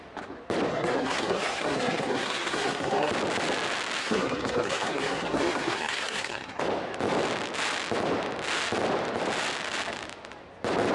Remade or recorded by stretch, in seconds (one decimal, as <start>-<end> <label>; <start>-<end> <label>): 0.0-0.7 recorded; 0.7-3.1 remade; 3.1-4.0 recorded; 4.0-6.6 remade; 6.6-10.9 recorded